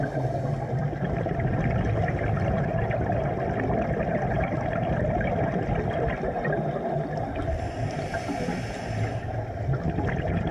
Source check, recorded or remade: recorded